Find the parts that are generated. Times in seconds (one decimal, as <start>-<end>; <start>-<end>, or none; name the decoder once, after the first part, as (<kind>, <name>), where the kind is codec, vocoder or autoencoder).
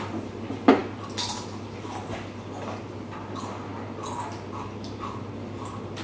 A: none